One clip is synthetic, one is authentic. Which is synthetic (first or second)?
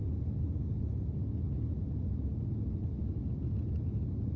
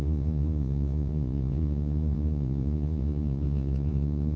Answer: second